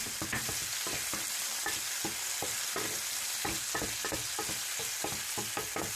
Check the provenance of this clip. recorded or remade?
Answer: recorded